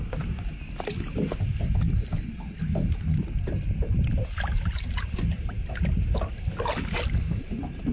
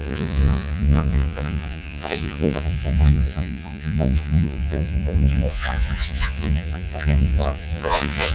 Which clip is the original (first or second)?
first